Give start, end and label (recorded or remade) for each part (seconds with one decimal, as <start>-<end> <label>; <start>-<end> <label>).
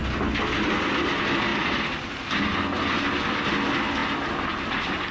0.0-5.1 recorded